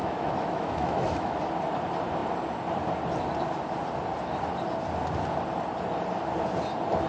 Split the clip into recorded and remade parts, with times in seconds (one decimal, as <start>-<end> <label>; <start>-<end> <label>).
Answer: 0.0-1.4 remade; 1.4-7.1 recorded